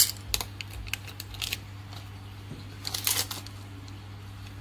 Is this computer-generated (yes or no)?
no